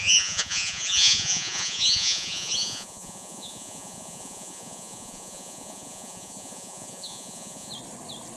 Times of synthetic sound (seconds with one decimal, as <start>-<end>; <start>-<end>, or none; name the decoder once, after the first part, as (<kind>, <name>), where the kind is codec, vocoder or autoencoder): 0.0-7.7 (vocoder, Vocos)